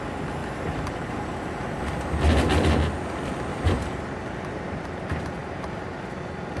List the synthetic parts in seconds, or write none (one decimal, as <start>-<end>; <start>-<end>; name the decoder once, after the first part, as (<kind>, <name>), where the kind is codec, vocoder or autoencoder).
0.4-1.4 (vocoder, BigVGAN v2); 3.5-4.8; 5.4-6.1